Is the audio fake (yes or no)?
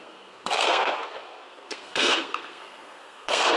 yes